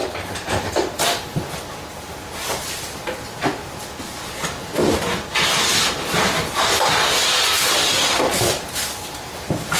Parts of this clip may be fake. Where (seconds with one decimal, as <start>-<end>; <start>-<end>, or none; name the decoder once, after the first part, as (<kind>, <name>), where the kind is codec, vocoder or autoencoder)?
0.0-0.7 (vocoder, BigVGAN v2); 4.6-9.8